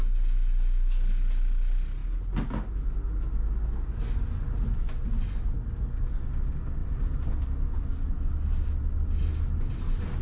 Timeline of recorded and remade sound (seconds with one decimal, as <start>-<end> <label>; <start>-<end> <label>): 0.0-10.2 recorded